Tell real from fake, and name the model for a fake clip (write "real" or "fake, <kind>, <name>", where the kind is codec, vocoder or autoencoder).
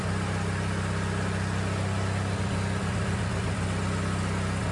real